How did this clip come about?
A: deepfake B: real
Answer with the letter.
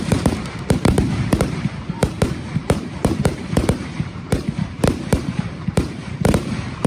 A